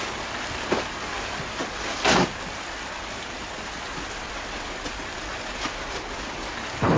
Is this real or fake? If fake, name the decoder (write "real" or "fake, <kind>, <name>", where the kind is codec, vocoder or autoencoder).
real